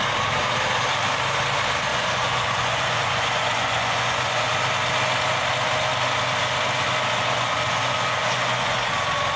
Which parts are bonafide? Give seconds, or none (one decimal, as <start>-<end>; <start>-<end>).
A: 0.0-1.9; 4.5-7.1; 8.9-9.4